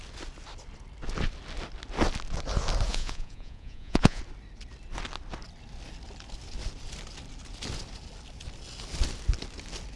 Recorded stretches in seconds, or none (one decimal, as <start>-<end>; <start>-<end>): 0.0-2.9; 4.2-10.0